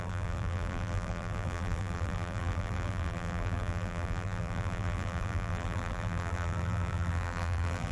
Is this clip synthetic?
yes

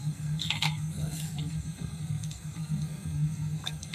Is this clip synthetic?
yes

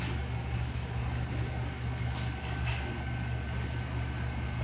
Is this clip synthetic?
yes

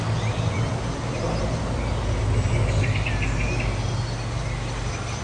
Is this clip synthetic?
no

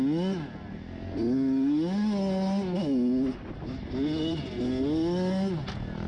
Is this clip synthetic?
no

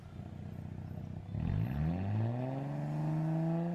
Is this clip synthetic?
no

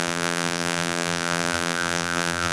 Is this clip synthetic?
yes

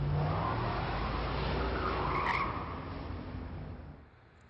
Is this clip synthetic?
no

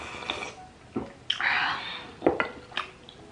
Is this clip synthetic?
no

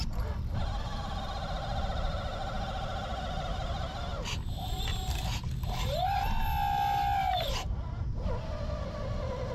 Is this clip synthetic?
no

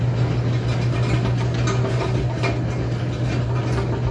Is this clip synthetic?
no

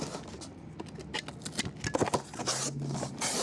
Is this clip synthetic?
no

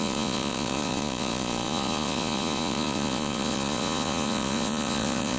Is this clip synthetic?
yes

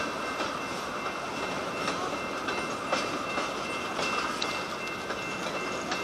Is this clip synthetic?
no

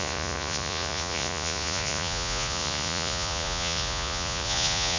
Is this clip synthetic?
yes